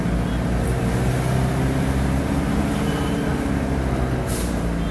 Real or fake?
real